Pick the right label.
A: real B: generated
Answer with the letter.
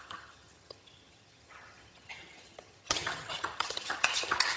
B